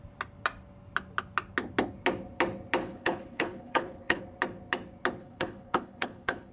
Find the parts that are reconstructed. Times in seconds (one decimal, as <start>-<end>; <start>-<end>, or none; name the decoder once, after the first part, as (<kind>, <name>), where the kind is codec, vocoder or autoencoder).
2.8-4.2 (codec, HILCodec); 5.2-6.5